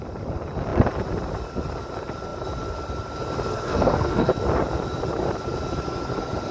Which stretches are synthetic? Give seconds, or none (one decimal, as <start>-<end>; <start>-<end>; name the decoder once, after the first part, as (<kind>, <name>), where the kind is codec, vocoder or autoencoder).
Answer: 3.5-4.3 (codec, SNAC)